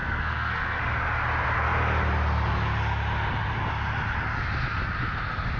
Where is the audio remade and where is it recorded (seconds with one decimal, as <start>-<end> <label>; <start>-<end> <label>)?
0.0-0.8 remade; 0.8-5.6 recorded